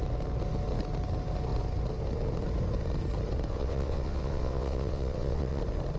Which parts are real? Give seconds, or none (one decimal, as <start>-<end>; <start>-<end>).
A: 0.0-3.5; 5.6-6.0